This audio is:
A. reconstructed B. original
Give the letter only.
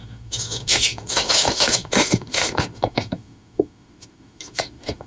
A